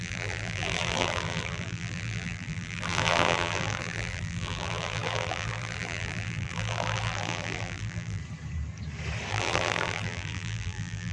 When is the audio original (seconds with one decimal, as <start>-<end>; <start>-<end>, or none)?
8.2-9.3